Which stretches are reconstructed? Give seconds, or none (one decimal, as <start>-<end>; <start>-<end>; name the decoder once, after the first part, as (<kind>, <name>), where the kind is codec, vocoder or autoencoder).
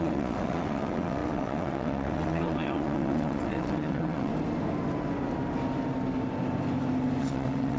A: 0.0-4.3 (vocoder, WaveNeXt); 7.2-7.8